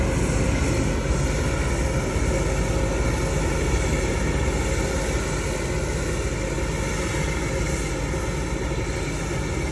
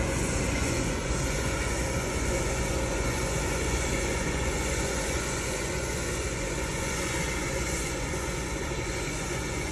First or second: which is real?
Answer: first